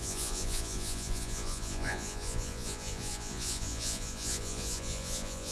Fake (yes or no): yes